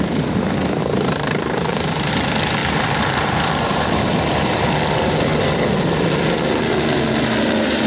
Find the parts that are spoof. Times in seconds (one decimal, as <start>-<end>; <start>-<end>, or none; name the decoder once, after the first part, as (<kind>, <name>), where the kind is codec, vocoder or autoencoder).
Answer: 0.8-2.1 (vocoder, BigVGAN v2); 2.6-4.2